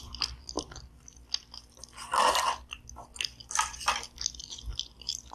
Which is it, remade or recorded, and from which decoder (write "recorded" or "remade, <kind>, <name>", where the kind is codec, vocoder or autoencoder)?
recorded